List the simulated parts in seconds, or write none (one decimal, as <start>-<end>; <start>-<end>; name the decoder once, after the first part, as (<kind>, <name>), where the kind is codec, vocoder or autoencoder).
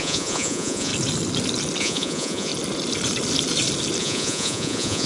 0.0-0.9 (vocoder, Vocos); 1.8-2.5; 4.0-5.1